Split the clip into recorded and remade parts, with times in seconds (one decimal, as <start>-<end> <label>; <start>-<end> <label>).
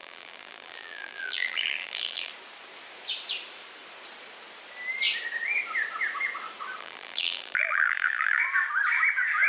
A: 0.0-2.3 remade; 2.3-6.8 recorded; 6.8-8.4 remade; 8.4-9.5 recorded